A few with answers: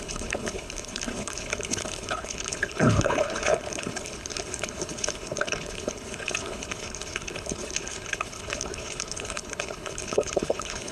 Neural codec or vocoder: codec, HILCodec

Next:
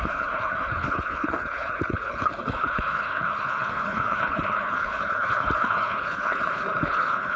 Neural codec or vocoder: codec, HILCodec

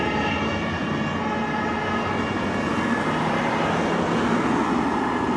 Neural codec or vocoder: none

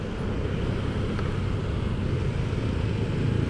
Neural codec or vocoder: none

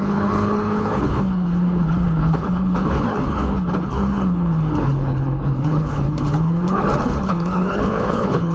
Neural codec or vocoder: codec, HILCodec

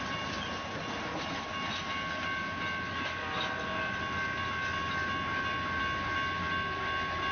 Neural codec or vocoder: none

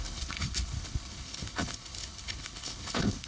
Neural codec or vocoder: codec, HILCodec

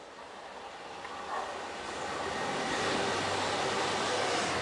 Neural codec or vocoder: none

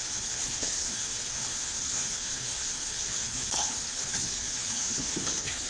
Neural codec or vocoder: codec, HILCodec